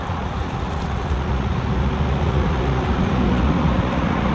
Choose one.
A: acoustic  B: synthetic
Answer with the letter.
B